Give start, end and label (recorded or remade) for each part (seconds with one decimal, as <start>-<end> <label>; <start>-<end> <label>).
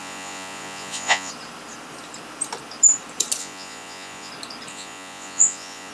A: 0.0-1.3 remade; 1.3-3.4 recorded; 3.4-4.3 remade; 4.3-4.7 recorded; 4.7-5.9 remade